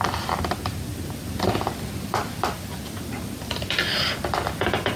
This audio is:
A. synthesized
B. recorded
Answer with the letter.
B